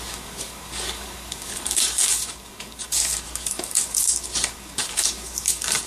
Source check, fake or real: fake